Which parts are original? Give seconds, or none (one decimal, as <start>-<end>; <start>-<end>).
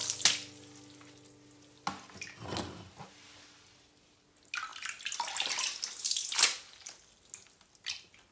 0.0-8.3